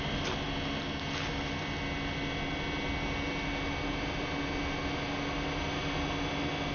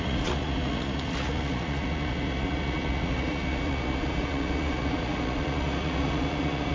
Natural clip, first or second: first